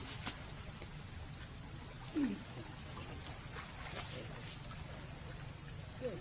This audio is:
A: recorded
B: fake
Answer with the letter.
A